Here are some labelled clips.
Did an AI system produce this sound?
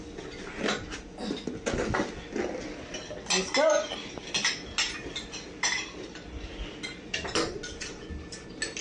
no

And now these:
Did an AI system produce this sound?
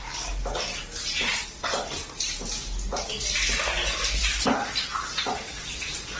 no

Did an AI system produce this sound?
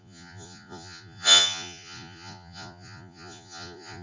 yes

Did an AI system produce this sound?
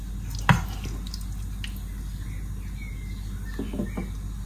no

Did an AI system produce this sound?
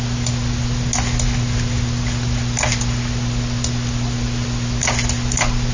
no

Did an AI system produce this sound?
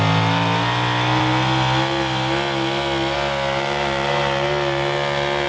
no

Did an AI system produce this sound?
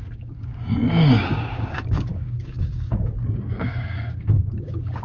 yes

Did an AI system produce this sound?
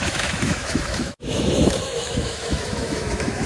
yes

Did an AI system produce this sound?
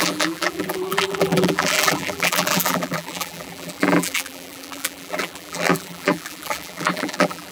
yes